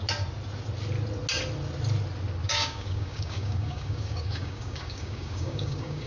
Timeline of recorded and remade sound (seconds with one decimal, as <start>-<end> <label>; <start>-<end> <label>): 0.0-2.4 recorded; 2.4-6.1 remade

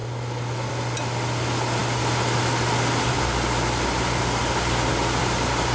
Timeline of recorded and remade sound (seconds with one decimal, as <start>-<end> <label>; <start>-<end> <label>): 0.0-5.7 recorded

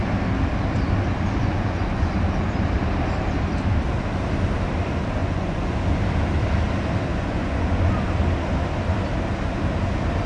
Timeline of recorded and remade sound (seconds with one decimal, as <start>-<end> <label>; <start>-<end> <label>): 0.0-1.4 recorded; 1.4-2.1 remade; 2.1-5.2 recorded; 5.2-5.8 remade; 5.8-7.1 recorded; 7.1-7.8 remade; 7.8-10.3 recorded

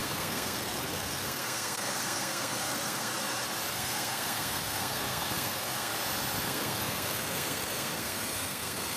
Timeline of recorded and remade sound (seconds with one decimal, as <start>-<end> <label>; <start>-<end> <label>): 0.0-3.1 remade; 3.1-3.7 recorded; 3.7-5.9 remade; 5.9-6.4 recorded; 6.4-9.0 remade

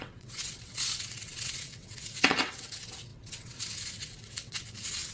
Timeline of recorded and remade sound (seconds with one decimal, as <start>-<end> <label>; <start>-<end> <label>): 0.0-5.1 remade

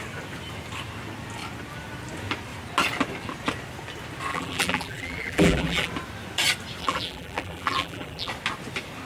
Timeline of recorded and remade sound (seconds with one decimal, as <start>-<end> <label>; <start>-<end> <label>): 0.0-4.3 recorded; 4.3-5.9 remade; 5.9-6.8 recorded; 6.8-8.3 remade; 8.3-9.1 recorded

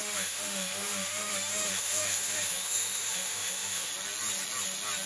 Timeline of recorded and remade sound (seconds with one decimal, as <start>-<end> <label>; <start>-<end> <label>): 0.0-3.9 remade; 3.9-5.1 recorded